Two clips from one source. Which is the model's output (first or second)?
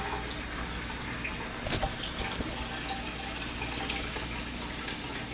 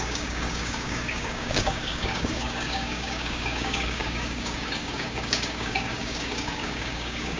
second